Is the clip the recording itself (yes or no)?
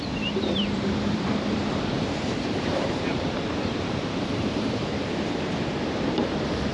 no